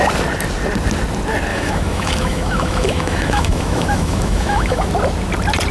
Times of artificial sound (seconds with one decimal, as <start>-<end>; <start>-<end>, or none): 1.5-4.9